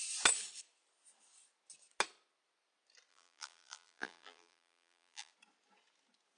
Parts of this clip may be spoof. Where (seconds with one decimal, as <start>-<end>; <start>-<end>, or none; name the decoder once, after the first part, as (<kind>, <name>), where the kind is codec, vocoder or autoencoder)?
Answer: 3.1-5.3 (vocoder, BigVGAN v2)